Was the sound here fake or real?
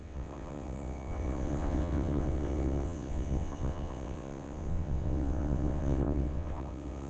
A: fake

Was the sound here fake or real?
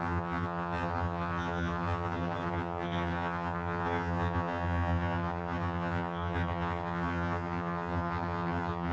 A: fake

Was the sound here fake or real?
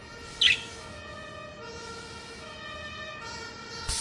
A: real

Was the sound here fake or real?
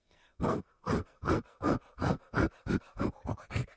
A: fake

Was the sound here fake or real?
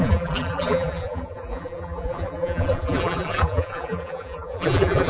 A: fake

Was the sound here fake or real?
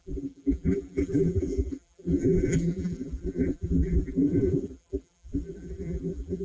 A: fake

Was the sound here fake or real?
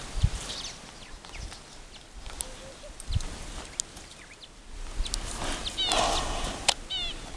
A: real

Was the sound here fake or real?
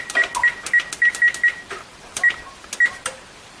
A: real